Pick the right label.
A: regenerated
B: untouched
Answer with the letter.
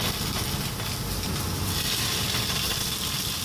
B